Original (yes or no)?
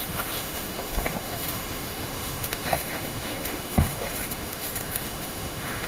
no